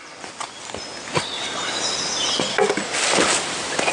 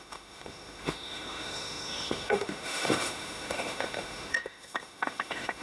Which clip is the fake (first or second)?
second